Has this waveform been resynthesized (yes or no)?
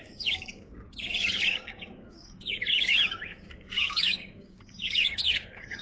yes